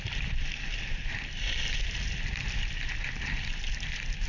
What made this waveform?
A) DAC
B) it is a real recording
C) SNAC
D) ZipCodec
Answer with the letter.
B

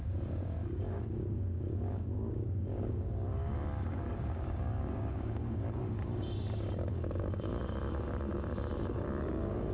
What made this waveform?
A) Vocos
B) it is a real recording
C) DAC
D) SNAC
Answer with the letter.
C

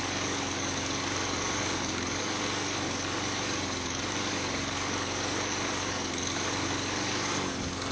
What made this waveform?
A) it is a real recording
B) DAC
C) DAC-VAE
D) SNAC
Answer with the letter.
B